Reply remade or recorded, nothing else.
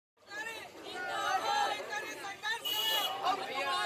recorded